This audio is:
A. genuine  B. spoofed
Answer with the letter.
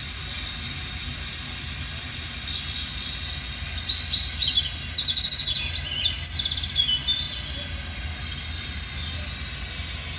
A